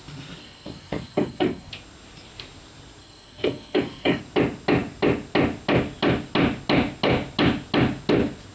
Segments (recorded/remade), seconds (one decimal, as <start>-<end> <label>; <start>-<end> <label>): 0.0-0.4 recorded; 0.4-1.7 remade; 1.7-3.0 recorded; 3.0-4.2 remade; 4.2-8.5 recorded